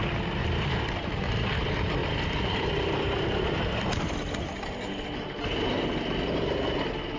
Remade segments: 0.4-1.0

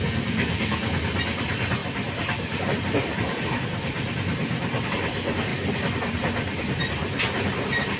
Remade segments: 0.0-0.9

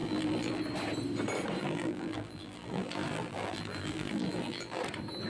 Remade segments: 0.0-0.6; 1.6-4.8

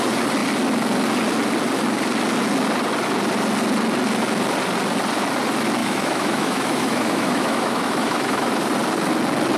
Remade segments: 5.8-8.5